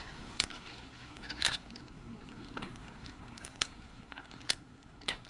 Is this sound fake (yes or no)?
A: yes